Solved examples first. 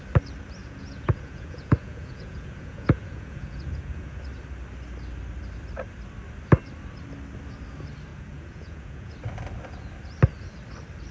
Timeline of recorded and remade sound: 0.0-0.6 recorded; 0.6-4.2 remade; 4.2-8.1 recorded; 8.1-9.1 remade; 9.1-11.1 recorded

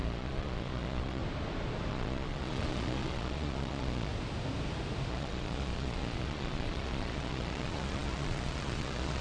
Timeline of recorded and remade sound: 0.0-1.2 remade; 1.2-1.9 recorded; 1.9-4.1 remade; 4.1-5.1 recorded; 5.1-9.2 remade

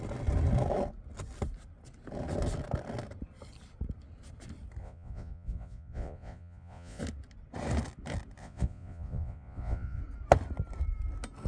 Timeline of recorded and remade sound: 0.0-4.8 recorded; 4.8-7.0 remade; 7.0-8.4 recorded; 8.4-10.0 remade; 10.0-11.5 recorded

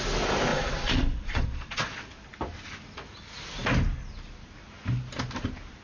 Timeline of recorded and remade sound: 0.0-0.5 recorded; 0.5-2.1 remade; 2.1-5.8 recorded

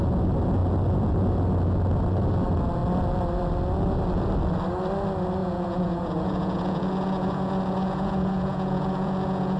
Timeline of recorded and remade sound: 0.0-5.4 recorded; 5.4-9.6 remade

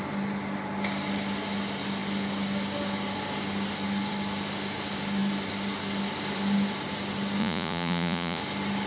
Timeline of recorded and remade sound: 0.0-7.4 recorded; 7.4-8.4 remade; 8.4-8.9 recorded

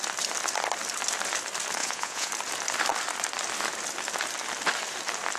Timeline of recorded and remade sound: 0.0-1.8 recorded; 1.8-2.3 remade; 2.3-5.4 recorded

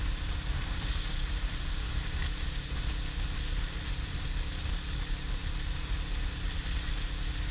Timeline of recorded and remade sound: 0.0-7.5 recorded